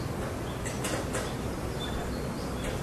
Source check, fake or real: real